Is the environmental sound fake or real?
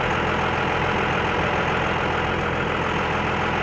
real